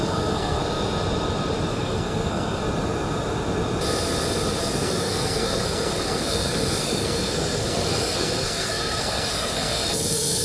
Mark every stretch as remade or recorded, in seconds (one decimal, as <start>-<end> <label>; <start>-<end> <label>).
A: 0.0-0.6 remade; 0.6-1.7 recorded; 1.7-2.6 remade; 2.6-4.6 recorded; 4.6-10.4 remade